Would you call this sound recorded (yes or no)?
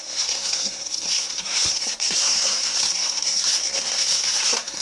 no